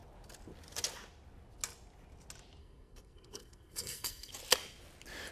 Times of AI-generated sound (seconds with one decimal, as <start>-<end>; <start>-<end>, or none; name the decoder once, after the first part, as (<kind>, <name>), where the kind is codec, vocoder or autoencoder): 2.6-4.3 (codec, SNAC)